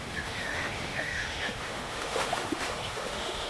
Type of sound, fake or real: fake